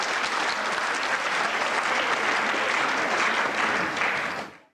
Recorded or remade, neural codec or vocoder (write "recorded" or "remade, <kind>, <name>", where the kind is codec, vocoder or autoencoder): recorded